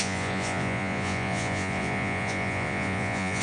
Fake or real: fake